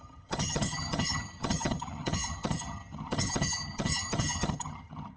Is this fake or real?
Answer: fake